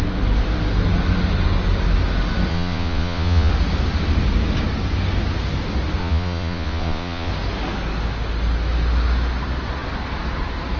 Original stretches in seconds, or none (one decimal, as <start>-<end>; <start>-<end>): 0.0-2.5; 3.5-6.0; 7.3-10.8